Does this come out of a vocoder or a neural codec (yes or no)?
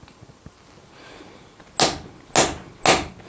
no